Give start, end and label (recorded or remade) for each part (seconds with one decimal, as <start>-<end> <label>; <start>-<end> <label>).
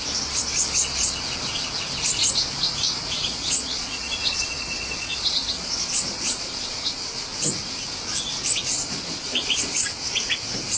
0.0-3.0 recorded; 3.0-6.9 remade; 6.9-8.8 recorded; 8.8-10.2 remade; 10.2-10.8 recorded